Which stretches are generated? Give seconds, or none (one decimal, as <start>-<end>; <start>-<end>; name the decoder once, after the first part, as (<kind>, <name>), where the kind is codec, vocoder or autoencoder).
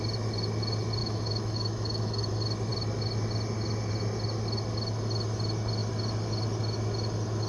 1.0-2.3 (autoencoder, DAC-VAE)